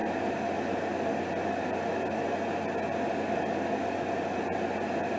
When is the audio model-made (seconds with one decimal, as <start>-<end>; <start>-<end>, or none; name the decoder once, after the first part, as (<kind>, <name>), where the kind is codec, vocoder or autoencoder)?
none